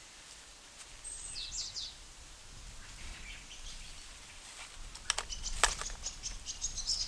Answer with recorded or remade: recorded